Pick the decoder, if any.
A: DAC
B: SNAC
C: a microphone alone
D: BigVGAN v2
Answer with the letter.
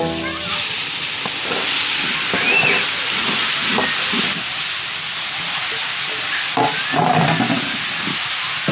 C